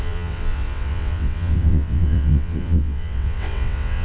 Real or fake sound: fake